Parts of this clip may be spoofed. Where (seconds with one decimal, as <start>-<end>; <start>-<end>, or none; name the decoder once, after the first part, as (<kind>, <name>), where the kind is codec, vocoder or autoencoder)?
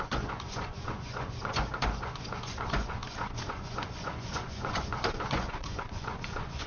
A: 0.0-6.7 (vocoder, Vocos)